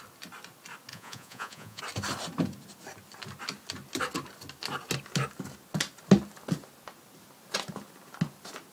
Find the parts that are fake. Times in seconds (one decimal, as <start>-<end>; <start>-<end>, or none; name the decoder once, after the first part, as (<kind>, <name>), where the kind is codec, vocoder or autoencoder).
0.9-1.8 (vocoder, Vocos)

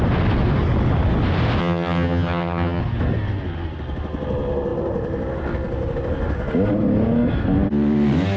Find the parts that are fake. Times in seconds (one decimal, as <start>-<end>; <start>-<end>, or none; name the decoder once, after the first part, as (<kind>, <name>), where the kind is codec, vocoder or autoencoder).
1.6-2.8 (vocoder, HiFi-GAN)

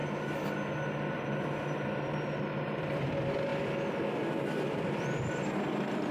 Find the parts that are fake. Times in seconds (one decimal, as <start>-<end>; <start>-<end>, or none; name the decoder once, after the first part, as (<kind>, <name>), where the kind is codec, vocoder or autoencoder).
none

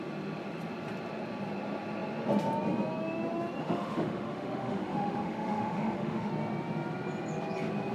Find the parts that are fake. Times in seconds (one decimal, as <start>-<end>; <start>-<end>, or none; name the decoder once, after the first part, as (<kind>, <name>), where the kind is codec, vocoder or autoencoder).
3.6-6.3 (autoencoder, DAC-VAE)

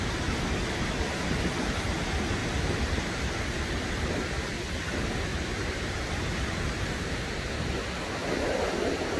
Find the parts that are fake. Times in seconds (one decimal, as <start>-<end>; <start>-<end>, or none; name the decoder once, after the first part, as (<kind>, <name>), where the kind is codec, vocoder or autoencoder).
2.4-3.0 (vocoder, BigVGAN v2); 5.3-7.3

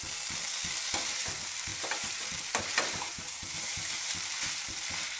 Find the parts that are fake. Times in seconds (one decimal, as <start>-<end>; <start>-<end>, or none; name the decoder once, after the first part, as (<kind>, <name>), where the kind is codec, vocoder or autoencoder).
1.7-4.1 (vocoder, BigVGAN v2)

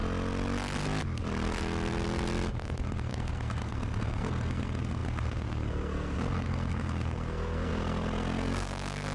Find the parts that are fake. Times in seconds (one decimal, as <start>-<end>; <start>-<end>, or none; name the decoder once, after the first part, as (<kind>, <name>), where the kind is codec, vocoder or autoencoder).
2.5-9.1 (codec, SNAC)

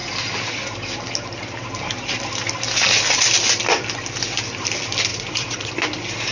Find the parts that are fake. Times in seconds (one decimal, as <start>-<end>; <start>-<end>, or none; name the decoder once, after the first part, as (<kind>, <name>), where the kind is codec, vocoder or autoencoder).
5.1-5.7 (vocoder, Vocos)